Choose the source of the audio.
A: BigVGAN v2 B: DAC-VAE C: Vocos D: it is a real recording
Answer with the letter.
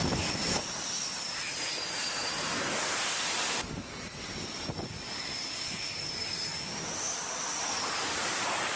D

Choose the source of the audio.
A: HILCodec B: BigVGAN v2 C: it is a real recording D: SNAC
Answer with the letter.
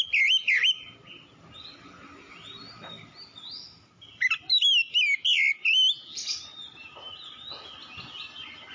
C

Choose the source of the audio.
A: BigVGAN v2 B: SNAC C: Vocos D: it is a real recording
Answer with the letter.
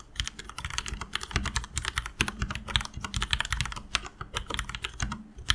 D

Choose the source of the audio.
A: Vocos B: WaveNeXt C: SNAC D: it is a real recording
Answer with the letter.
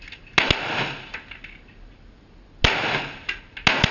D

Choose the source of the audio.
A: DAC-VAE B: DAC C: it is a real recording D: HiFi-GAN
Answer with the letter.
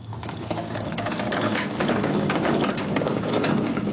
B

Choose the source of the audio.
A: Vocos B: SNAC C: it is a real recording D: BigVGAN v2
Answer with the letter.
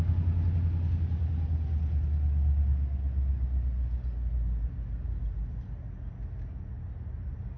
C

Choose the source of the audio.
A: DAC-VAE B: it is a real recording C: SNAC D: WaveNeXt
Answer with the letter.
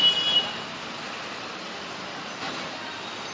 B